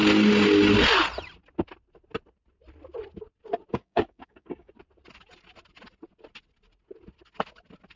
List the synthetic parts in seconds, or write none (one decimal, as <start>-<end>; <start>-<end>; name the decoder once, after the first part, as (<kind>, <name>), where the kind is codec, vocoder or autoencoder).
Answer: 3.7-4.7 (codec, DAC)